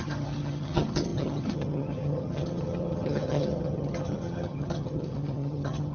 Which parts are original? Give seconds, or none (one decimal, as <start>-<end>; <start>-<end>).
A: none